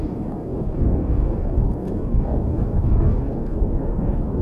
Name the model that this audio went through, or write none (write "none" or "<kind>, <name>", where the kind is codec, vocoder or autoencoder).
codec, DAC